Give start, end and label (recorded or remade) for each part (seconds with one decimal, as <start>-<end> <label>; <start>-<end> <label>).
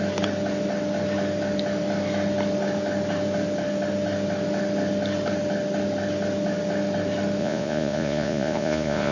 0.0-7.4 recorded; 7.4-9.1 remade